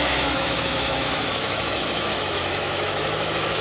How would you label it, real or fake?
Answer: fake